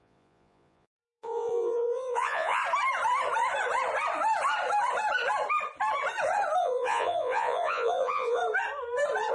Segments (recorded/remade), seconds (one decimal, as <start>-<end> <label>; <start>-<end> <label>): 0.0-2.6 remade; 2.6-6.6 recorded; 6.6-8.4 remade; 8.4-9.3 recorded

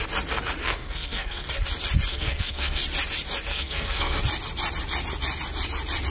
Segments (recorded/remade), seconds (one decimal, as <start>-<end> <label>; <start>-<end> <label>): 0.0-0.6 recorded; 0.6-1.5 remade; 1.5-2.1 recorded; 2.1-2.8 remade; 2.8-3.5 recorded; 3.5-4.2 remade; 4.2-6.1 recorded